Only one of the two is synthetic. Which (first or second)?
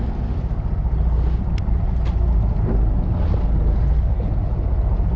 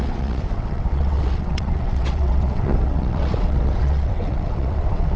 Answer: second